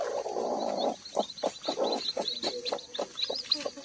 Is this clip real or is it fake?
real